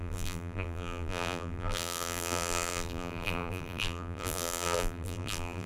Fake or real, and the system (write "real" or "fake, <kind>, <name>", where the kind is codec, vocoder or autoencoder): fake, vocoder, BigVGAN v2